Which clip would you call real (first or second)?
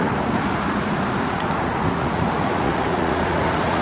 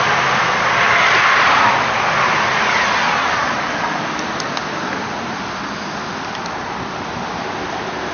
second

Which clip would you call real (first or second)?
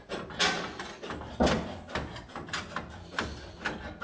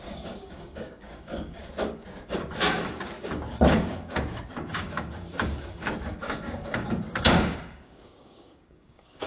first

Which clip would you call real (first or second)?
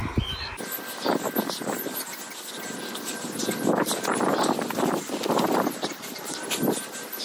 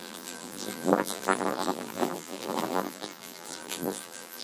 first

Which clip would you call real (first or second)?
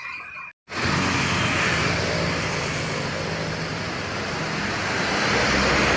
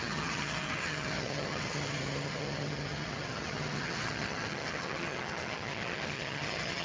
first